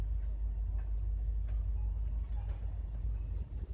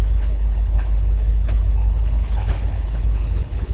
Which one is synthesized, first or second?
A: second